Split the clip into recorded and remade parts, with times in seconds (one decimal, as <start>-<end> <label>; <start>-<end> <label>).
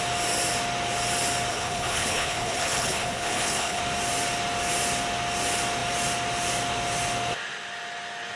0.0-1.5 recorded; 1.5-3.8 remade; 3.8-8.4 recorded